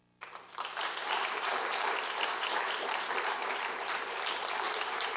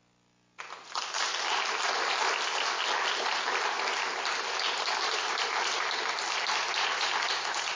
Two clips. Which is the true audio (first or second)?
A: second